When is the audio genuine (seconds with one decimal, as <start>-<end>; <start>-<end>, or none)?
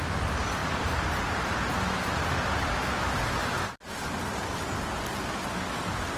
0.0-0.6; 2.2-3.4; 4.3-6.2